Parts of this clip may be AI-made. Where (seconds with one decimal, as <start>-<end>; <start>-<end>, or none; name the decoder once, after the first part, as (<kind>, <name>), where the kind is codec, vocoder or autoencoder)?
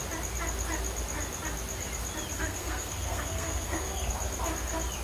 2.3-4.1 (codec, SNAC)